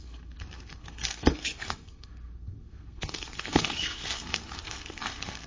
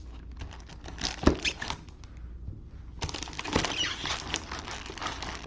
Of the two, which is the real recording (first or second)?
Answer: second